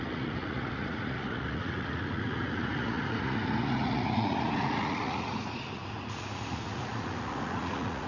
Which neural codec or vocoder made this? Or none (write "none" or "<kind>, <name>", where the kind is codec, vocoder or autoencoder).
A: vocoder, Vocos